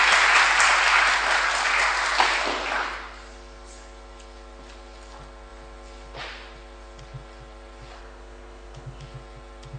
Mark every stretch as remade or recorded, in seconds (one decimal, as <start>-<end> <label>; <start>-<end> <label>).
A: 0.0-8.0 recorded; 8.0-9.0 remade; 9.0-9.8 recorded